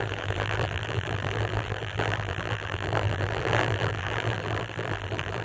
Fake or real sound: fake